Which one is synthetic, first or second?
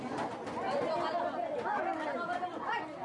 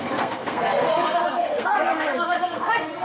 second